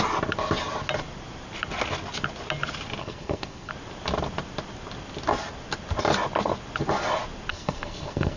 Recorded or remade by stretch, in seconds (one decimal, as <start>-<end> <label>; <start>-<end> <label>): 0.0-3.0 recorded; 3.0-3.7 remade; 3.7-7.5 recorded; 7.5-8.4 remade